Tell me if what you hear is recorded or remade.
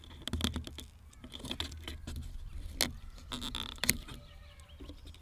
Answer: recorded